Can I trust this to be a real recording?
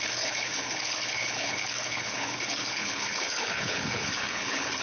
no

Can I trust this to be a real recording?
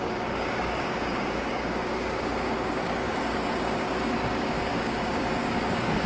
no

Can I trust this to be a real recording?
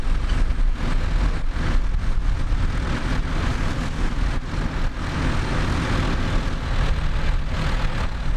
yes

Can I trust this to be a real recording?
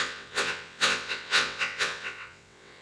no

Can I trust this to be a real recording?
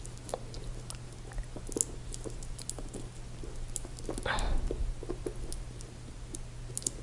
yes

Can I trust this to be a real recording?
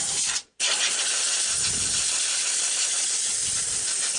no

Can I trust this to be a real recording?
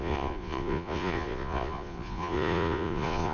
no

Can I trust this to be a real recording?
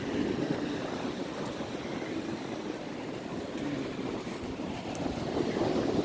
yes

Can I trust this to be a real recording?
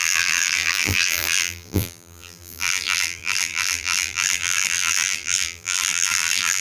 no